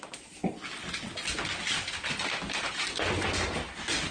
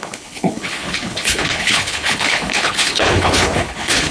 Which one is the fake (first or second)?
second